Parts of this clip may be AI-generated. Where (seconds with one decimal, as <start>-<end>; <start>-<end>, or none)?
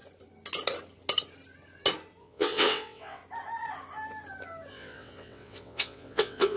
2.2-3.2; 4.7-6.6